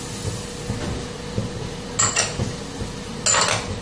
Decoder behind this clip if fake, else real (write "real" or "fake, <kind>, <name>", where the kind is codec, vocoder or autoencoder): real